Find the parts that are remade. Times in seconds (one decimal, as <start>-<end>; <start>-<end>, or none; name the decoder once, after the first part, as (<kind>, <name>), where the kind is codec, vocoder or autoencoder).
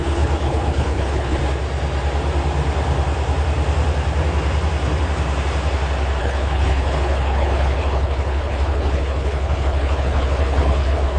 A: 0.0-1.4 (codec, HILCodec); 6.2-11.2